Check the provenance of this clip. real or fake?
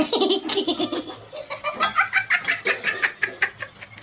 real